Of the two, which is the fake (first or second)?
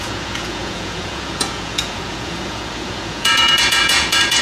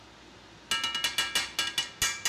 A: first